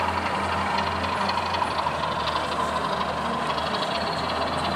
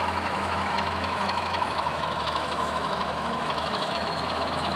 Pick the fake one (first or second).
second